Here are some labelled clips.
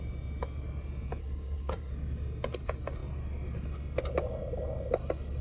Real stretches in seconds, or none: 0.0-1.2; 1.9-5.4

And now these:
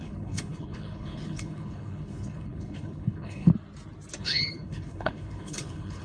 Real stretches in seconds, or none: 3.5-4.2

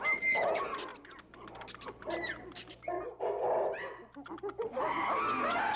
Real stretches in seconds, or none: 0.0-5.8